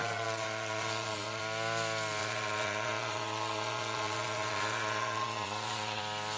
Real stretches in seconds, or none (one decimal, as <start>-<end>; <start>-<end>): 1.4-2.2; 6.0-6.4